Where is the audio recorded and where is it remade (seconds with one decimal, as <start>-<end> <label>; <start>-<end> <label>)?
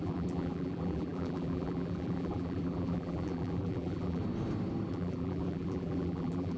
0.0-4.2 remade; 4.2-4.9 recorded; 4.9-6.6 remade